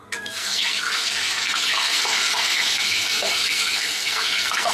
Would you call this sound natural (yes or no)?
no